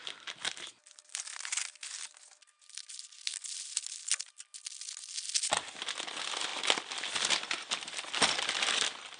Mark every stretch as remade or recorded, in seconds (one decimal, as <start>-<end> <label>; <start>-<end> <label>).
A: 0.0-9.2 recorded